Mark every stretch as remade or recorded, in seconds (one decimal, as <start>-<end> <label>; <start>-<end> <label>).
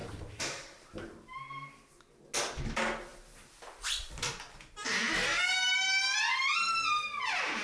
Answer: 0.0-1.9 remade; 1.9-7.6 recorded